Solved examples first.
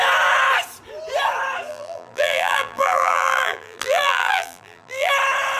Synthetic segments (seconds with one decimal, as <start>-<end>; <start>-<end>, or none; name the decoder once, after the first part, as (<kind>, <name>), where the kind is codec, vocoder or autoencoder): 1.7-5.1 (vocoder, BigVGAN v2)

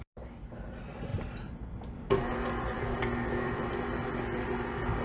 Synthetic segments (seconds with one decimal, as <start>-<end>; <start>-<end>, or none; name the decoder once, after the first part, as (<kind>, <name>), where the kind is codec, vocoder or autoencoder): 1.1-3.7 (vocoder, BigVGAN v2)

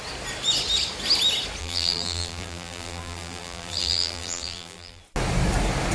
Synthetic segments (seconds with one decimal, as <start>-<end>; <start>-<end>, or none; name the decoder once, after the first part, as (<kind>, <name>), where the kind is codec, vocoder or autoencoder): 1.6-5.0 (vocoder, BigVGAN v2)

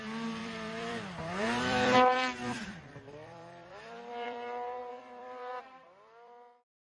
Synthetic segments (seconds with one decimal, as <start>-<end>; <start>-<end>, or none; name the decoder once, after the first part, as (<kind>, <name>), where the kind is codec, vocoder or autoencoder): 0.0-7.0 (vocoder, BigVGAN v2)

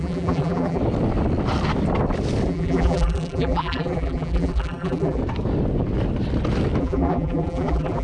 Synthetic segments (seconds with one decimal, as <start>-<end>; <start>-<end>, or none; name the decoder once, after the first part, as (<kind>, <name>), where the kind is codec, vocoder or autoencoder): 0.0-0.8 (vocoder, BigVGAN v2); 2.5-5.2; 6.8-8.0